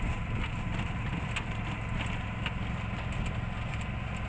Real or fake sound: real